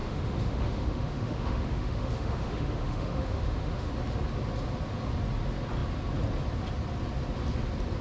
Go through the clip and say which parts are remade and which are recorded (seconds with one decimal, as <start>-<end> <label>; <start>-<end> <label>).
0.0-3.9 remade; 3.9-8.0 recorded